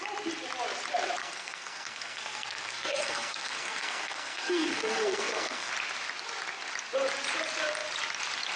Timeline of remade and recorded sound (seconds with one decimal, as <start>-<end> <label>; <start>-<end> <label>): 0.0-1.2 recorded; 1.2-5.7 remade; 5.7-8.6 recorded